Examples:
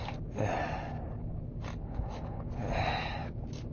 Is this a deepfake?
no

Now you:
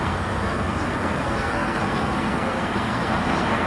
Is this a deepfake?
yes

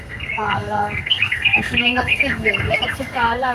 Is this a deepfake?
yes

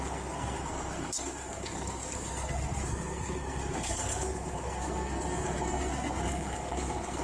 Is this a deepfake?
yes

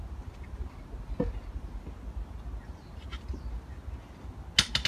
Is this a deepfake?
no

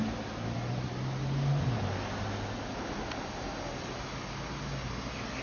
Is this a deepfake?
no